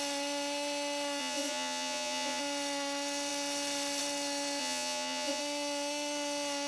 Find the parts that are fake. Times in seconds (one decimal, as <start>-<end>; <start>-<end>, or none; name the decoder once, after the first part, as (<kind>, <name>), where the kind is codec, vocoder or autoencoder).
1.2-2.4 (vocoder, Vocos); 4.6-5.4